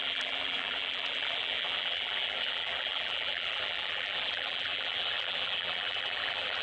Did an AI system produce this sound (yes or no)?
yes